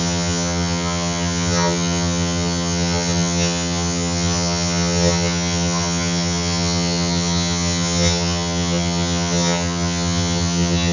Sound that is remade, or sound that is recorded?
remade